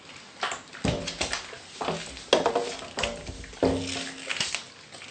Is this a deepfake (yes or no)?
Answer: no